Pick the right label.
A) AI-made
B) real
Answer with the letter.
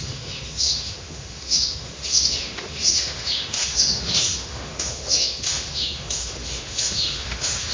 A